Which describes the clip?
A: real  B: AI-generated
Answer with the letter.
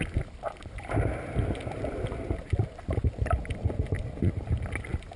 B